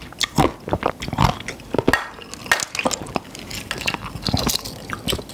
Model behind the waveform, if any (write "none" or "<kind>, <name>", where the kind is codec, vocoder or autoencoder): none